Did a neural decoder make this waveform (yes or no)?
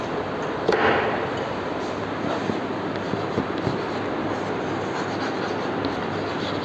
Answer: no